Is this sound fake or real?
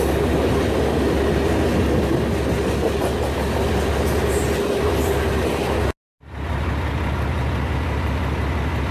real